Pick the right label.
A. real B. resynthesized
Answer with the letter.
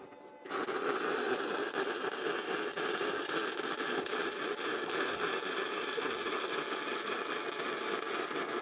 A